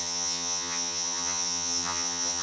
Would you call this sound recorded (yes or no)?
no